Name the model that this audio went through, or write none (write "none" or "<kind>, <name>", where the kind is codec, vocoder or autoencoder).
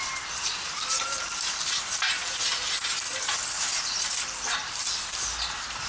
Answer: vocoder, BigVGAN v2